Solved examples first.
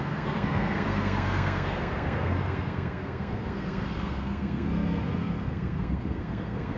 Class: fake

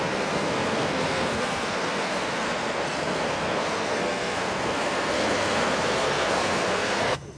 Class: fake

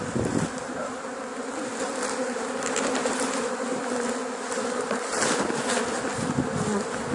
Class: real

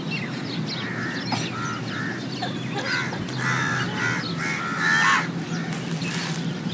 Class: real